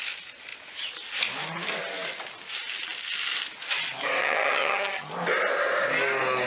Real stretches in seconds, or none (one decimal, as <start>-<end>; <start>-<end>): 0.0-4.2; 5.1-6.5